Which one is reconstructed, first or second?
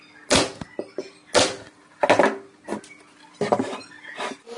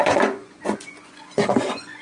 second